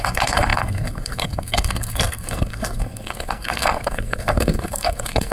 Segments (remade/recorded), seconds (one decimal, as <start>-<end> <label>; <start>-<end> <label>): 0.0-5.3 remade